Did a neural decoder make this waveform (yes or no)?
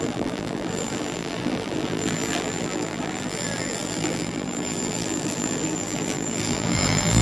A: yes